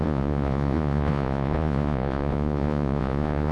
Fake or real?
fake